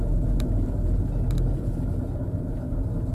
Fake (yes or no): yes